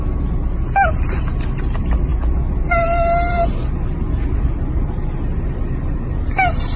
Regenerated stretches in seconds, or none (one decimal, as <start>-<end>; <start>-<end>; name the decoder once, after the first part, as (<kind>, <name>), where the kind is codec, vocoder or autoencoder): none